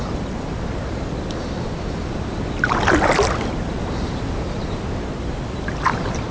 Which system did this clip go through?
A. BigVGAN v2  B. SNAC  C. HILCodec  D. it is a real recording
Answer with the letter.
A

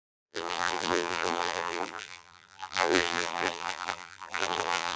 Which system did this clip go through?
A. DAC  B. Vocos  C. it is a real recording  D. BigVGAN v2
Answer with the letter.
D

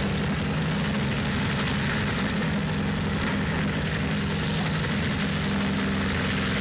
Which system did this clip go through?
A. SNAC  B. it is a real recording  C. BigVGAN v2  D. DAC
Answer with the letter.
B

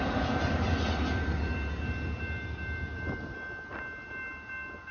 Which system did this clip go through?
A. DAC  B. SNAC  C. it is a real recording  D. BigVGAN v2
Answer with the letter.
C